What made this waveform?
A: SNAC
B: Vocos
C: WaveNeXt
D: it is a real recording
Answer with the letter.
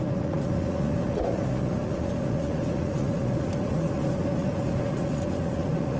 B